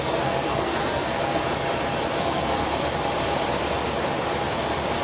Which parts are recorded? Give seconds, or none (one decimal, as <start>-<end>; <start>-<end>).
1.4-2.2; 2.8-5.0